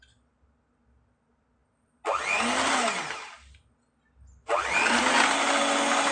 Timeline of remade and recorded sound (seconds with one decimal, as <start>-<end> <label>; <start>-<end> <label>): 0.0-6.1 recorded